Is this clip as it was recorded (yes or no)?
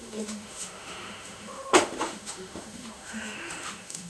no